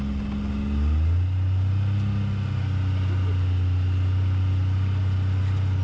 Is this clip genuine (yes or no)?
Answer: yes